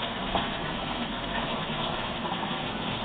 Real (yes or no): no